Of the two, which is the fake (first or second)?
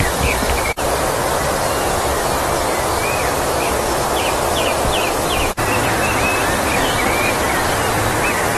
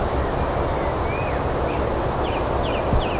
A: first